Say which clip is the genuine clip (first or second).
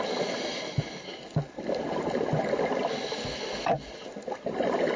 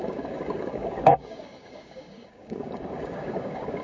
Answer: first